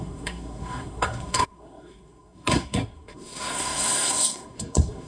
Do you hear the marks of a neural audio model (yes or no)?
yes